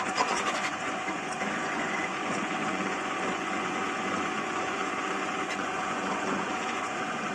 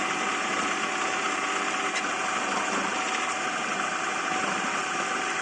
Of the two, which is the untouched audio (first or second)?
second